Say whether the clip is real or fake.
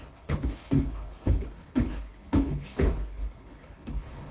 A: fake